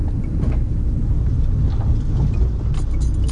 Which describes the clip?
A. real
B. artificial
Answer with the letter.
A